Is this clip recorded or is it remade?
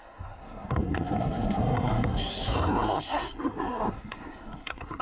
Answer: remade